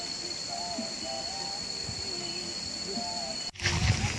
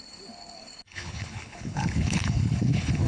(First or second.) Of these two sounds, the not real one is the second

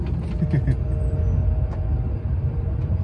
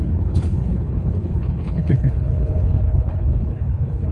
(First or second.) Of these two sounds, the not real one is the second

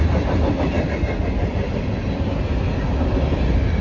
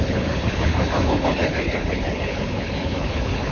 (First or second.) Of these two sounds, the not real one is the second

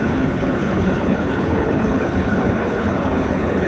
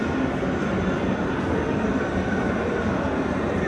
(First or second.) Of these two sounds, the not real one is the first